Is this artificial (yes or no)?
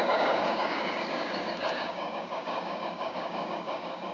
yes